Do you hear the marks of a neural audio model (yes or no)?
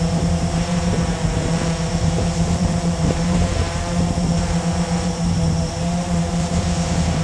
yes